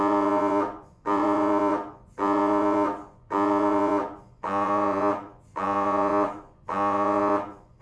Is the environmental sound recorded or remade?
remade